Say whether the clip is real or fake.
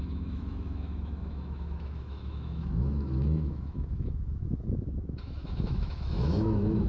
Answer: fake